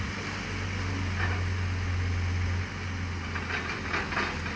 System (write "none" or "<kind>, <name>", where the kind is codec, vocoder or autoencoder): none